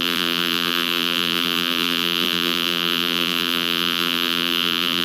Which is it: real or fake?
fake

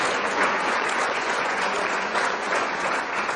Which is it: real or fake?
fake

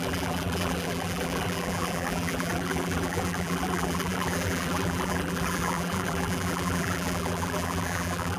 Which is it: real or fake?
fake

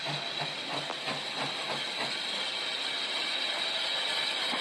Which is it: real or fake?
real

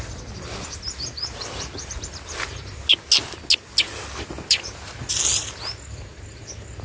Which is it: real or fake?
real